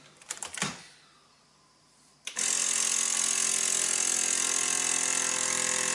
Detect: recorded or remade recorded